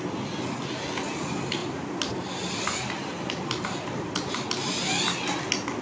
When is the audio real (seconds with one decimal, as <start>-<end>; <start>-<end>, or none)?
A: 0.0-5.8